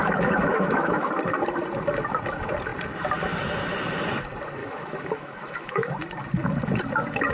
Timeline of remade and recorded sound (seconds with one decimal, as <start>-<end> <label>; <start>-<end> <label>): 0.0-1.1 remade; 1.1-4.6 recorded; 4.6-5.9 remade; 5.9-7.3 recorded